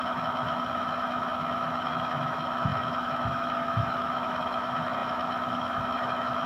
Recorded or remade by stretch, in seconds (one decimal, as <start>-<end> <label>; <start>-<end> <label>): 0.0-6.5 remade